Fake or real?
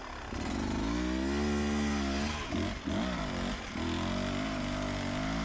real